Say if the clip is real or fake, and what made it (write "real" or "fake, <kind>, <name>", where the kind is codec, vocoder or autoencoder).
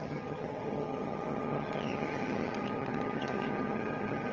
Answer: fake, vocoder, HiFi-GAN